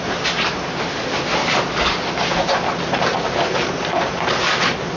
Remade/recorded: recorded